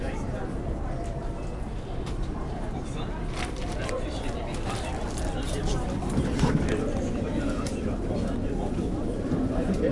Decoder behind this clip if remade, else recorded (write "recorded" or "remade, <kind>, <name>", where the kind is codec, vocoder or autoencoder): remade, vocoder, BigVGAN v2